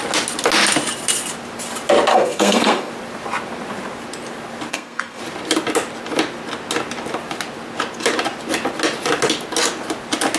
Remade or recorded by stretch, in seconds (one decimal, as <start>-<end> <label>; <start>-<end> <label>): 0.0-2.1 recorded; 2.1-2.9 remade; 2.9-4.7 recorded; 4.7-5.2 remade; 5.2-10.4 recorded